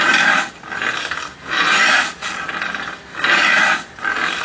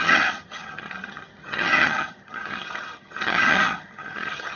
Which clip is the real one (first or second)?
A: first